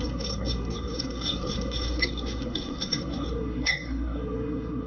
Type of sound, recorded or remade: remade